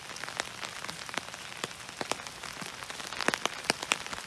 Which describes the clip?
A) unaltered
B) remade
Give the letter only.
A